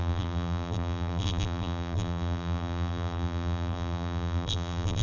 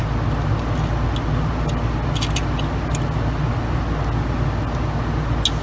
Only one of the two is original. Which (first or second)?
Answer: second